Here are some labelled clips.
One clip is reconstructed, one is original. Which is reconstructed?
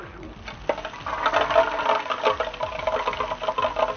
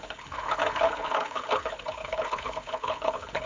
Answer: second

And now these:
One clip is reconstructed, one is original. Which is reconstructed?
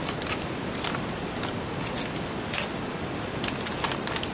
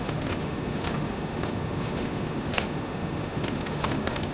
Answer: second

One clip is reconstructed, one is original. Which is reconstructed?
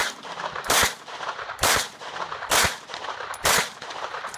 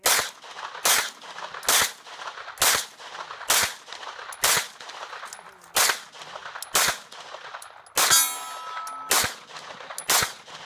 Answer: first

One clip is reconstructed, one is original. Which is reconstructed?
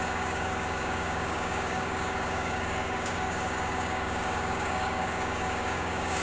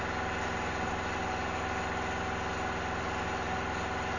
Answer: first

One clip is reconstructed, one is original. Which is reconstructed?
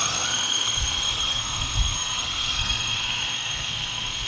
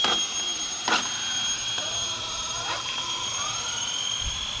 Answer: first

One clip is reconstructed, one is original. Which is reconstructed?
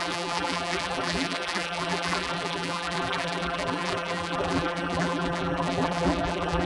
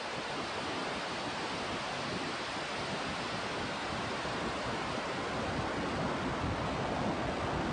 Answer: first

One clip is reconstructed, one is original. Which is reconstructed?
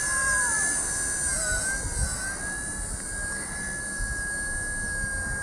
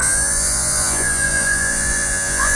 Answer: second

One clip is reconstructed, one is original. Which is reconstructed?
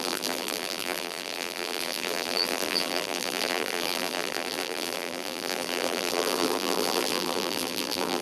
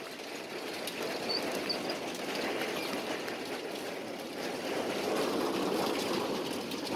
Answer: first